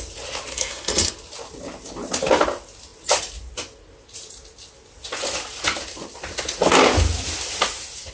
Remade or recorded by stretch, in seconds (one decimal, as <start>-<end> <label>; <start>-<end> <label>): 0.0-0.5 recorded; 0.5-1.1 remade; 1.1-8.1 recorded